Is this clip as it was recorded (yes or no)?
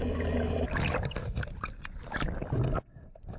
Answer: yes